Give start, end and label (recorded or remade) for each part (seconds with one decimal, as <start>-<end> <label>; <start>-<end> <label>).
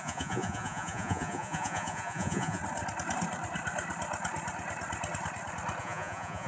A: 0.0-2.6 remade; 2.6-5.8 recorded; 5.8-6.5 remade